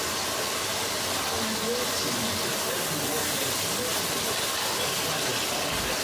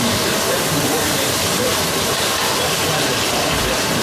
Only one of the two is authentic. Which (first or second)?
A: first